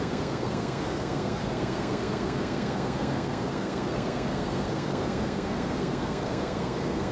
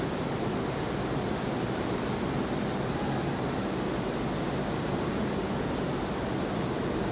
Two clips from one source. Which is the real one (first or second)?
second